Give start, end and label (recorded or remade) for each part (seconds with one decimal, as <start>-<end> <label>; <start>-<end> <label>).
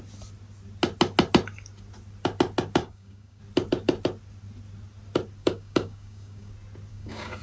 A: 0.0-2.8 recorded; 2.8-3.4 remade; 3.4-5.4 recorded; 5.4-6.5 remade; 6.5-6.9 recorded; 6.9-7.4 remade